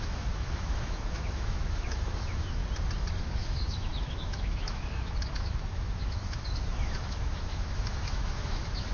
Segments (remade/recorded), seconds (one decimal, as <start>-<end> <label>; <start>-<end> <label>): 0.0-2.6 remade; 2.6-3.2 recorded; 3.2-8.9 remade